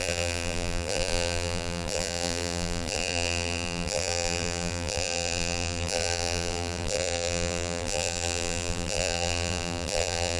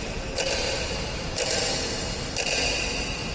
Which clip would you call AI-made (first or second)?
first